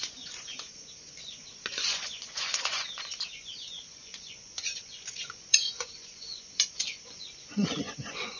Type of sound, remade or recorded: remade